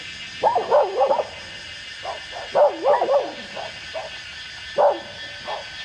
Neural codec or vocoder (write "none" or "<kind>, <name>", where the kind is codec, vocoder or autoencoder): none